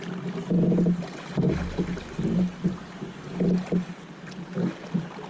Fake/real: real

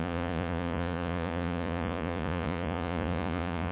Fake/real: fake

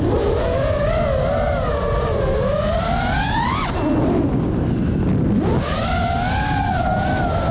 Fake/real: real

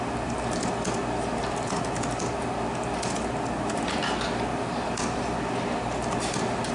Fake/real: real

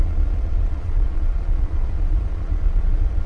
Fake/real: fake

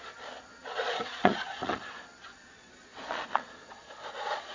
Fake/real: fake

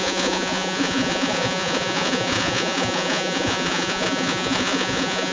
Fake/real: fake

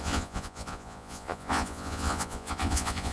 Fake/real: fake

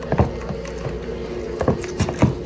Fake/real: real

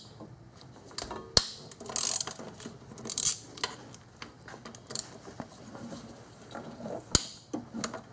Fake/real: real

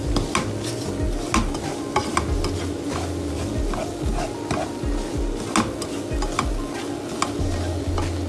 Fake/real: real